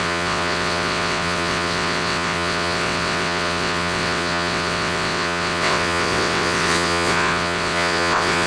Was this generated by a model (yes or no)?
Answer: yes